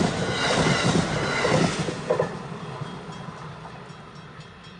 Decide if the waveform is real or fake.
real